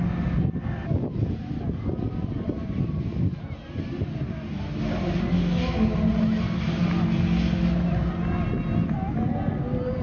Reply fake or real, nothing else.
real